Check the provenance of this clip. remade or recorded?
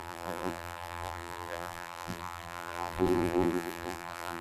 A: remade